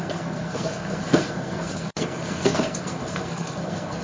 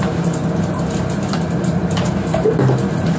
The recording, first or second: second